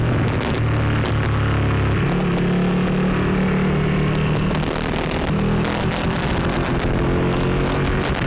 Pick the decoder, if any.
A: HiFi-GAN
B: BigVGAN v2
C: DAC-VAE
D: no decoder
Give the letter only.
D